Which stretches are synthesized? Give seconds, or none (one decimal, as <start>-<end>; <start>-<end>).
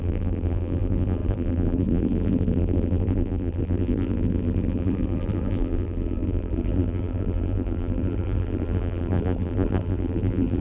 0.0-10.6